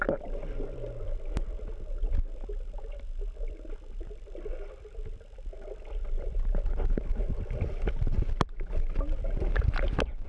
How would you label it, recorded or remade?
recorded